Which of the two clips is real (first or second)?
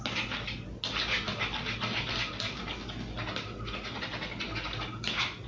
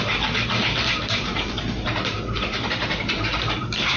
first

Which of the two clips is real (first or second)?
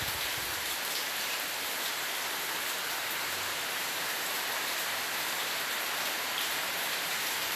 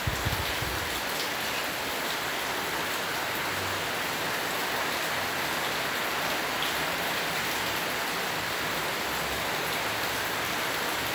second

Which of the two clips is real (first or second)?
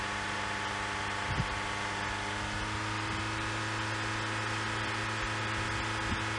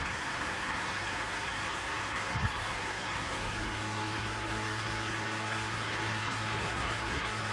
first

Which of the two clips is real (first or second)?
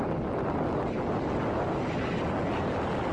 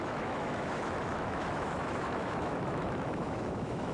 first